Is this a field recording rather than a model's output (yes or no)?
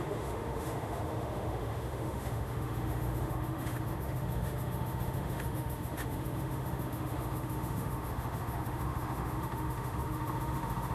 no